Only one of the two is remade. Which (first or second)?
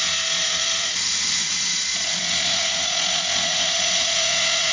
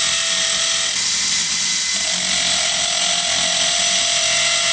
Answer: first